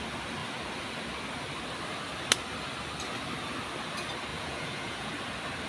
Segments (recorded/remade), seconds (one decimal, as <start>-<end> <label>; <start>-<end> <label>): 0.0-4.3 recorded; 4.3-5.1 remade; 5.1-5.7 recorded